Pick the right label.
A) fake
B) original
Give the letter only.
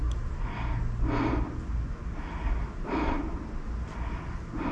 B